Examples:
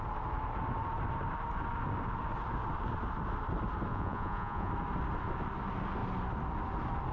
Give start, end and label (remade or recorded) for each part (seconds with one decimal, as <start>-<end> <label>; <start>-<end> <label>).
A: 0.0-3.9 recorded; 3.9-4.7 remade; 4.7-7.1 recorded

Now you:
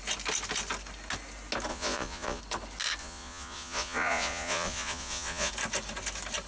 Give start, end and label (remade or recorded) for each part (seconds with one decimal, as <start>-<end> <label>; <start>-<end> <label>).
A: 0.0-1.7 recorded; 1.7-2.4 remade; 2.4-3.0 recorded; 3.0-5.5 remade; 5.5-6.5 recorded

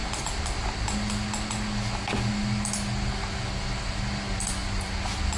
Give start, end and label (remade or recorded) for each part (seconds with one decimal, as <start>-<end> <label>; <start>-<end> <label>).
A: 0.0-5.4 recorded

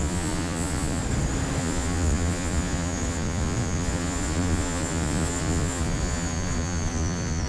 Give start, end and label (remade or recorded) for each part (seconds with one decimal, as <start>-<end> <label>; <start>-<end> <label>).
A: 0.0-1.0 remade; 1.0-1.6 recorded; 1.6-7.5 remade

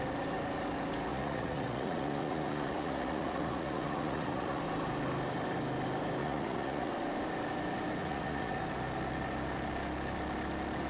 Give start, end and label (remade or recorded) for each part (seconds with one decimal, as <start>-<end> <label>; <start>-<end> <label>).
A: 0.0-1.1 recorded; 1.1-4.6 remade; 4.6-6.2 recorded; 6.2-6.9 remade; 6.9-8.0 recorded; 8.0-8.6 remade; 8.6-10.9 recorded